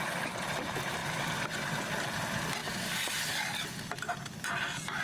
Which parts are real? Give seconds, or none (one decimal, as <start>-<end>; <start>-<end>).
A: 0.0-2.6; 3.8-5.0